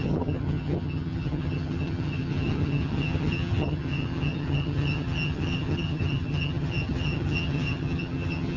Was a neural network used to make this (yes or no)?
yes